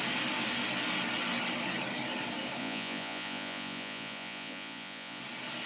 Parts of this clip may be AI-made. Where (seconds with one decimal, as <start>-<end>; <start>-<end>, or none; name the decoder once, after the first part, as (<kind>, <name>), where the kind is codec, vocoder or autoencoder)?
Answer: 2.6-5.2 (vocoder, Vocos)